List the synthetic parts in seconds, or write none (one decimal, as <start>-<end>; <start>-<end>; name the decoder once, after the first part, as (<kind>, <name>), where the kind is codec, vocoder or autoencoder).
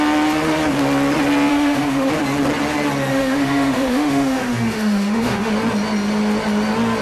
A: 1.5-2.1 (autoencoder, DAC-VAE); 3.1-5.5